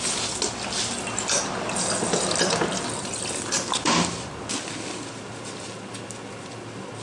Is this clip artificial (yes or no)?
no